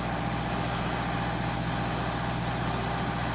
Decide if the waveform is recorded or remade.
recorded